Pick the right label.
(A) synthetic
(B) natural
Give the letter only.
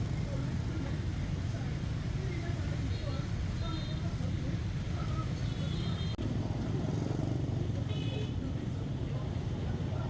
B